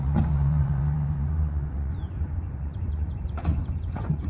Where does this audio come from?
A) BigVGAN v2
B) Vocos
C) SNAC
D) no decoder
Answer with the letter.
B